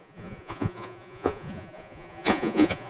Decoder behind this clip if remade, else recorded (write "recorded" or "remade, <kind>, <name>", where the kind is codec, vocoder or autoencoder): remade, vocoder, Vocos